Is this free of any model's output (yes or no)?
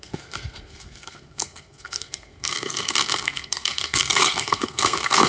no